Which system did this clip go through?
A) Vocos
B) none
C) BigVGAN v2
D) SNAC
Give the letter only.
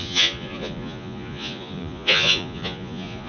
A